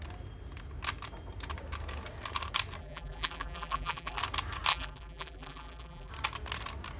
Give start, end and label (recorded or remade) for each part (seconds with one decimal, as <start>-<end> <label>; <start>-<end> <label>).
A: 0.0-2.8 recorded; 2.8-4.2 remade; 4.2-4.7 recorded; 4.7-6.1 remade; 6.1-7.0 recorded